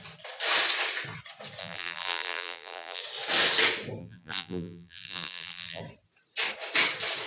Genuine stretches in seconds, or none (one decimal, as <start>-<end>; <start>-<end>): 0.0-1.6; 3.0-4.0; 5.8-7.3